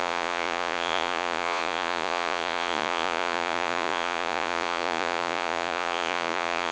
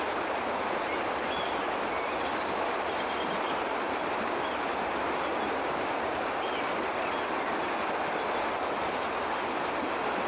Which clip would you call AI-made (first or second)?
first